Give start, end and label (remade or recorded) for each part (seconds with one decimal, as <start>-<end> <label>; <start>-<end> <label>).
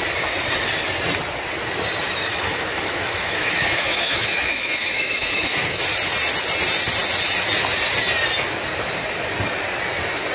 0.0-2.3 recorded; 2.3-5.8 remade; 5.8-10.3 recorded